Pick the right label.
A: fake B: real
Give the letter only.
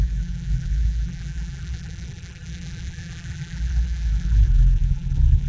A